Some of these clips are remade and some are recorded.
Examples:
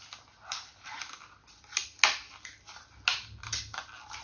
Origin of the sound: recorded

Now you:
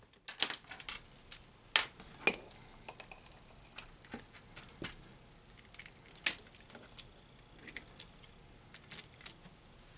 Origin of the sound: recorded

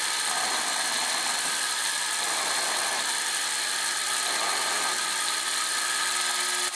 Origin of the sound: recorded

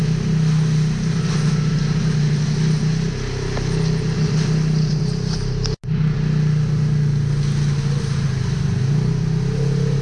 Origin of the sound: recorded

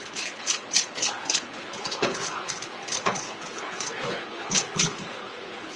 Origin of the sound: remade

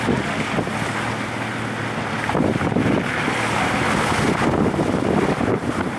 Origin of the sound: recorded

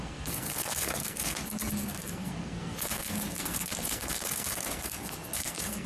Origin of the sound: remade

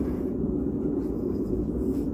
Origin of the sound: remade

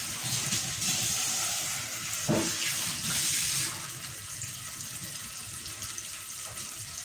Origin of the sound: recorded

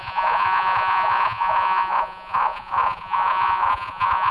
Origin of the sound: remade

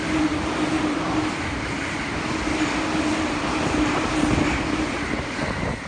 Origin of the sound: recorded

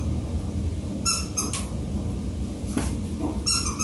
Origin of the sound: recorded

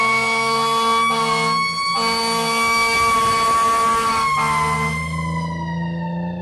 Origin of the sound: recorded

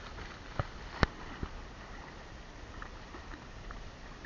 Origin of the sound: recorded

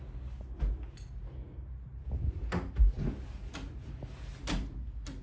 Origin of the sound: recorded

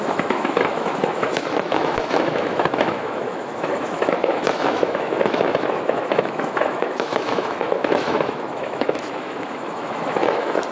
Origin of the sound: remade